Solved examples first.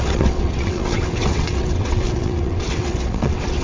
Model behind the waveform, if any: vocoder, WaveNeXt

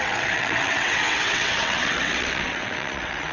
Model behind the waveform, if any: vocoder, WaveNeXt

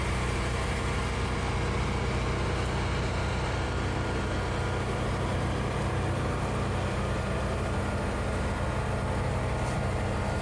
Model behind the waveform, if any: none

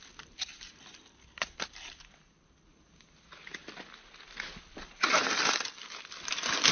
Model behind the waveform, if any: none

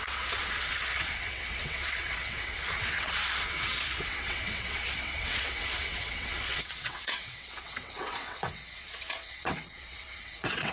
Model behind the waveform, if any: vocoder, WaveNeXt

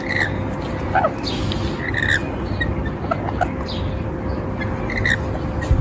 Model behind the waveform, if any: none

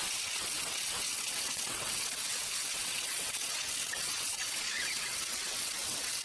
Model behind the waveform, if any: vocoder, WaveNeXt